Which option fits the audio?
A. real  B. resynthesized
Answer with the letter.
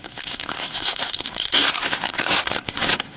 B